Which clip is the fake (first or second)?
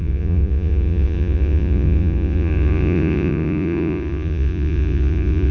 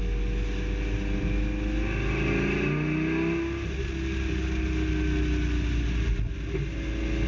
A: first